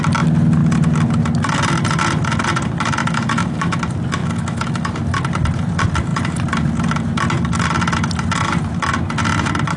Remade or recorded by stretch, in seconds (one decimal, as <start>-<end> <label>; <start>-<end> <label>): 0.0-3.0 recorded; 3.0-3.8 remade; 3.8-4.2 recorded; 4.2-4.9 remade; 4.9-9.8 recorded